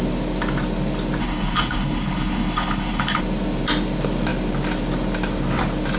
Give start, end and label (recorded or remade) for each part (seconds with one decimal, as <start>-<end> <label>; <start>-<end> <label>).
0.0-1.2 recorded; 1.2-3.2 remade; 3.2-6.0 recorded